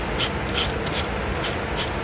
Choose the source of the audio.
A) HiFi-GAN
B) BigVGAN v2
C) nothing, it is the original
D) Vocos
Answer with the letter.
C